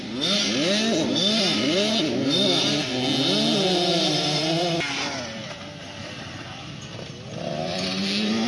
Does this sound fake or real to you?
real